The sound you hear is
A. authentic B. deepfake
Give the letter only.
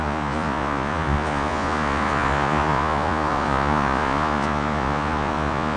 B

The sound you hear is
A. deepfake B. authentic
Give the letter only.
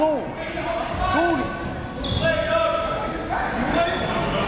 B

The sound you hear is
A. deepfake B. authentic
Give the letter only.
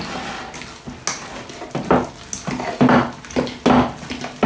B